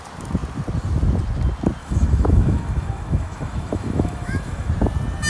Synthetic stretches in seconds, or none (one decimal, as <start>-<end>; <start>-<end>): 1.8-4.7